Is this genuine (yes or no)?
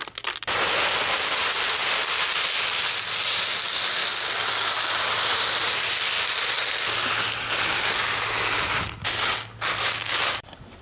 yes